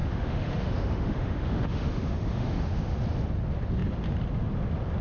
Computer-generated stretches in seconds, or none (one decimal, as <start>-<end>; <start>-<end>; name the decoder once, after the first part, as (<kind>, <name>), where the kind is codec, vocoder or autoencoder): 0.0-3.0 (autoencoder, DAC-VAE)